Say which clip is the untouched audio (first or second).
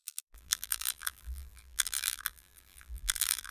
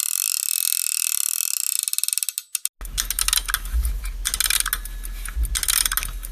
second